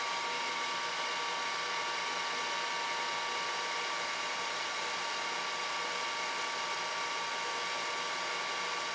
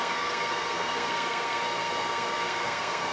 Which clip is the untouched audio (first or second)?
first